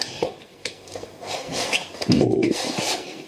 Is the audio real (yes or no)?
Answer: no